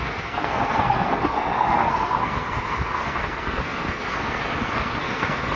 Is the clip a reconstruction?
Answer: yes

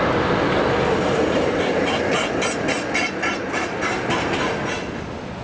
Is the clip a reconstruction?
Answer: no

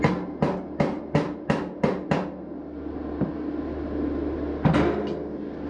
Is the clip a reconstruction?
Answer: no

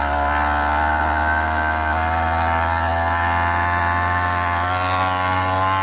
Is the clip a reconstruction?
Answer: no